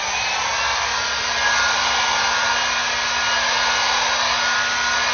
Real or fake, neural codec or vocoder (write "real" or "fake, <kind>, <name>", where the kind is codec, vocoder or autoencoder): real